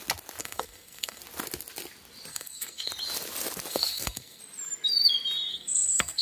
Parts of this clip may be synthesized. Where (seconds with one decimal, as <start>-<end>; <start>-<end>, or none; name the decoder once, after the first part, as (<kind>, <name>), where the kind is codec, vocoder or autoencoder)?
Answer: 0.4-1.2 (codec, SNAC); 2.3-2.9; 3.7-4.4; 5.5-6.2